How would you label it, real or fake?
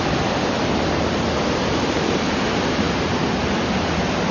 real